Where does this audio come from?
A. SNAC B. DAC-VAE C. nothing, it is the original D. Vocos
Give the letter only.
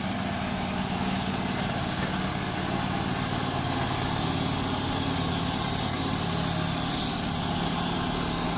C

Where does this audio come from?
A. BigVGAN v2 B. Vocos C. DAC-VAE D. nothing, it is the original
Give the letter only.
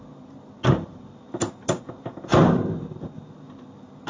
A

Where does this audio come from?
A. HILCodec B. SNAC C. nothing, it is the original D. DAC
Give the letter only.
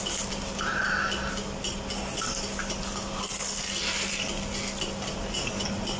C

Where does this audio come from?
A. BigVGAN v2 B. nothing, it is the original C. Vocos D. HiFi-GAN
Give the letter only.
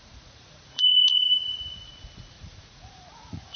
C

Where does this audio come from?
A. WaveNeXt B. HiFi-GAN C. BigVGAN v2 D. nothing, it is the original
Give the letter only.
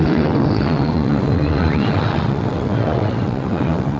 A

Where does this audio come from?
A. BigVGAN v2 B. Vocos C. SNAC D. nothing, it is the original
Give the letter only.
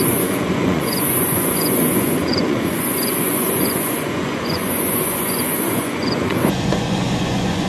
B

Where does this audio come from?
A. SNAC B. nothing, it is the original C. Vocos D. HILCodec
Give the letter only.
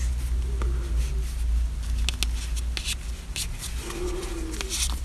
B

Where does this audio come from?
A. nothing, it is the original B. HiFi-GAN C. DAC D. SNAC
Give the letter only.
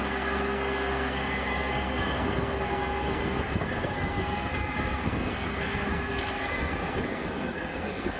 D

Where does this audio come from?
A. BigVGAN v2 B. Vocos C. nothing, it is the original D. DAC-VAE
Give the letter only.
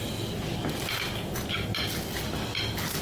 C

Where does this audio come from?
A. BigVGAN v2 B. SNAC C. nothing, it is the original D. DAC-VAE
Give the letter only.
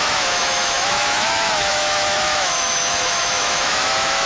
D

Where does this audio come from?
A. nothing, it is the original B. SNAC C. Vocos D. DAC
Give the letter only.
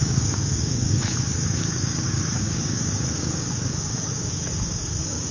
D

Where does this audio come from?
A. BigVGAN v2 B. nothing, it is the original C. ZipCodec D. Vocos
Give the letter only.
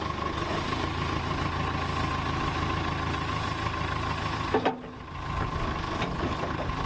B